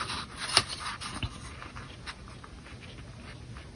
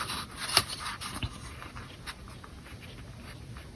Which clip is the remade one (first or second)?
second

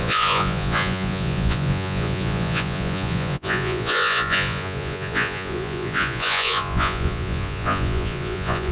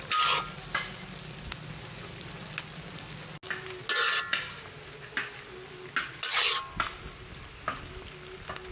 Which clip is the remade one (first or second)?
first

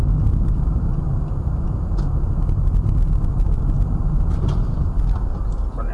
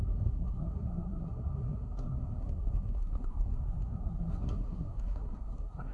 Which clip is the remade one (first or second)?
second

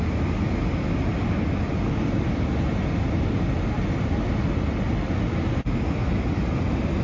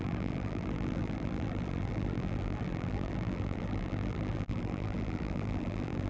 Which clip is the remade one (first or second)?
second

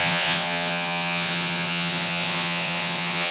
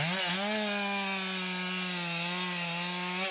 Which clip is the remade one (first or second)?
first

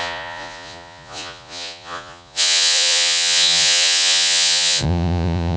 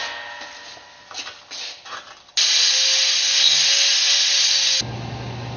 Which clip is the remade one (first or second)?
first